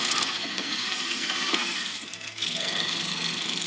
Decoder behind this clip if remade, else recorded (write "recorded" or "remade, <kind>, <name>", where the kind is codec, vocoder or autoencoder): remade, codec, SNAC